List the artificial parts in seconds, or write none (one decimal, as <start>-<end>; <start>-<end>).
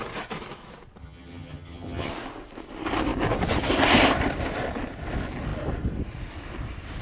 1.0-2.1